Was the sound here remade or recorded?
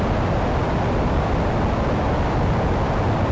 recorded